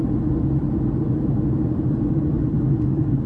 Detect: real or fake real